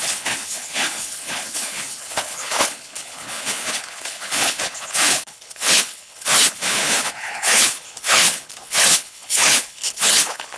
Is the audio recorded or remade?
remade